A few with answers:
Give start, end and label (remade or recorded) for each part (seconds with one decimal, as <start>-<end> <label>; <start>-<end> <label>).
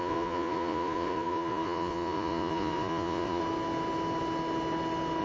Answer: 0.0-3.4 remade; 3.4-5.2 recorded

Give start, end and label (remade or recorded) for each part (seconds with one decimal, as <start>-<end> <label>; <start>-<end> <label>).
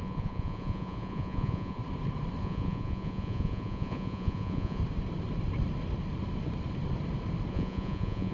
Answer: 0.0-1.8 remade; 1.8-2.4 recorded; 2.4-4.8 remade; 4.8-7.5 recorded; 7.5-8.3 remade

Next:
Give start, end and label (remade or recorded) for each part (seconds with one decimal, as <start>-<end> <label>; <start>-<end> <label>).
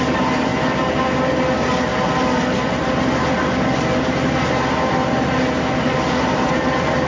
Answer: 0.0-7.1 recorded